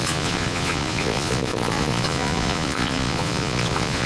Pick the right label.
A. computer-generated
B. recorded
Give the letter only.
A